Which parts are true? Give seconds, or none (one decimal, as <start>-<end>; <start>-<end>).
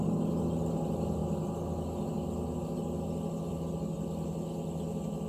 0.0-5.3